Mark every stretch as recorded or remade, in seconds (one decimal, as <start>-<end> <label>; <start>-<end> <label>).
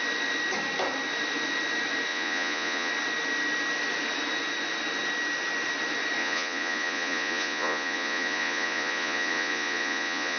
0.0-2.1 recorded; 2.1-2.9 remade; 2.9-6.2 recorded; 6.2-10.4 remade